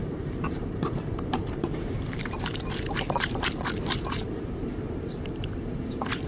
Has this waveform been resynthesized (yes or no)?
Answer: yes